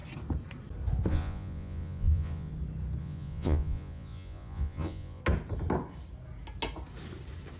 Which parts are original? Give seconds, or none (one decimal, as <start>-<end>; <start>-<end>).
0.0-1.1; 2.5-3.0; 5.2-7.6